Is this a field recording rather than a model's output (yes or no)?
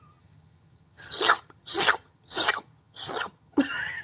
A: no